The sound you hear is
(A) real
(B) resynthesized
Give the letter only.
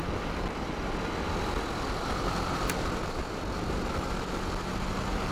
A